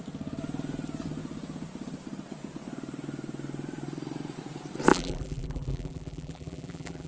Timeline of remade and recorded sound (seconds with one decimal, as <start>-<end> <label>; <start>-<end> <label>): 0.0-4.9 recorded; 4.9-7.1 remade